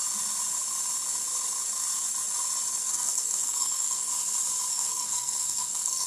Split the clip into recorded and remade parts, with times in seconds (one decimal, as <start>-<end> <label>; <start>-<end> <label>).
0.0-2.7 recorded; 2.7-4.1 remade; 4.1-4.7 recorded; 4.7-6.1 remade